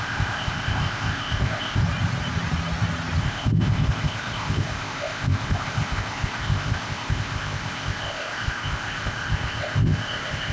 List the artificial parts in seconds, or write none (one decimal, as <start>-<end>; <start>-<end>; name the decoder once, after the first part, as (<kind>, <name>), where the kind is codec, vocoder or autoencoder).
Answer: 0.0-1.8 (codec, ZipCodec); 3.2-10.5